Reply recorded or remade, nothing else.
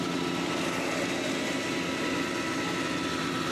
recorded